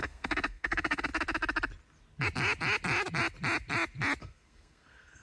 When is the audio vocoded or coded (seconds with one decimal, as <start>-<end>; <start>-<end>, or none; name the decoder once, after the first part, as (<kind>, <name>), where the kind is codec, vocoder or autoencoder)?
0.0-1.1 (codec, SNAC); 4.2-5.2

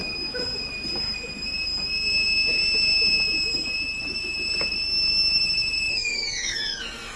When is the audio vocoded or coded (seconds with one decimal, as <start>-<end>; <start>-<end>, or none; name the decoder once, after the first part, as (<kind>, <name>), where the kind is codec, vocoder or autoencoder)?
5.9-7.2 (codec, SNAC)

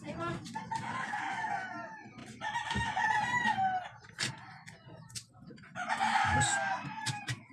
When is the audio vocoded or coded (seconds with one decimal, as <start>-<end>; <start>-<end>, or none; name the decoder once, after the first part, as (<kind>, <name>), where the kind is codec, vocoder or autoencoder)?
none

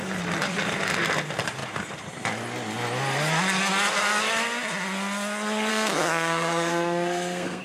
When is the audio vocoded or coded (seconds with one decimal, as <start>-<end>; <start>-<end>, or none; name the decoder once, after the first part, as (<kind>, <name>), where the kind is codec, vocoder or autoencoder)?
5.7-7.6 (codec, SNAC)